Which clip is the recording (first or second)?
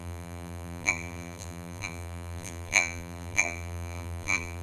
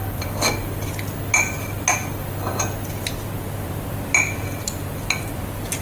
second